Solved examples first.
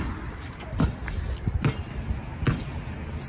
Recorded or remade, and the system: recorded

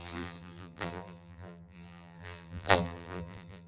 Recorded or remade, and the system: remade, vocoder, BigVGAN v2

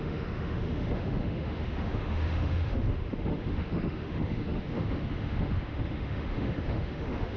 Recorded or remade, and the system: remade, autoencoder, DAC-VAE